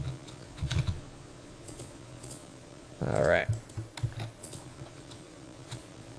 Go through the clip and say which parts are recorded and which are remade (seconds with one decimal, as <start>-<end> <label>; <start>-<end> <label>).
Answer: 0.0-3.4 remade; 3.4-4.4 recorded; 4.4-6.2 remade